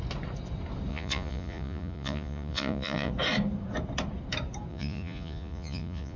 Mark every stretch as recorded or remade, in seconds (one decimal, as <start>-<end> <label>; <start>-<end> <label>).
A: 0.0-0.9 recorded; 0.9-3.1 remade; 3.1-4.7 recorded; 4.7-6.2 remade